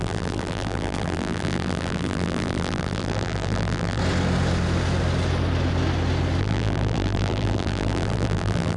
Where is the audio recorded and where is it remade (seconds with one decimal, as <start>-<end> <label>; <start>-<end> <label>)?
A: 0.0-4.0 remade; 4.0-6.4 recorded; 6.4-8.8 remade